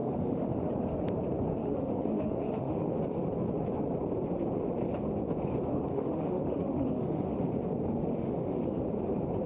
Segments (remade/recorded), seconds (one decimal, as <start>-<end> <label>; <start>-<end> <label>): 0.0-0.7 remade; 0.7-1.6 recorded; 1.6-3.0 remade; 3.0-5.9 recorded; 5.9-7.4 remade; 7.4-8.2 recorded; 8.2-8.8 remade; 8.8-9.5 recorded